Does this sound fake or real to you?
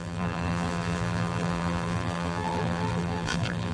fake